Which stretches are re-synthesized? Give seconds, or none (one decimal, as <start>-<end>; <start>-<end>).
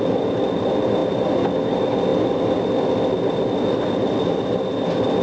none